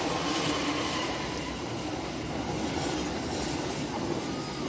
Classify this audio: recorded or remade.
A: recorded